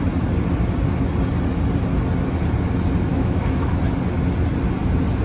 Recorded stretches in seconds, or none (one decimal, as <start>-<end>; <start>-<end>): 0.0-3.1; 3.8-5.2